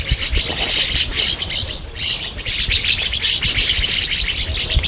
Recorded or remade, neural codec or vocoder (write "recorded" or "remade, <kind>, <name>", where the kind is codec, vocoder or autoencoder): recorded